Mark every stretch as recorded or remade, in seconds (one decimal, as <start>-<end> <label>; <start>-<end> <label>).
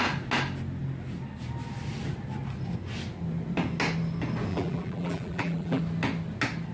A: 0.0-4.5 recorded; 4.5-5.8 remade; 5.8-6.7 recorded